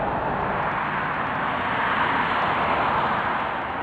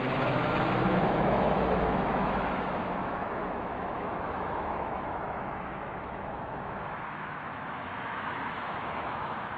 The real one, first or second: first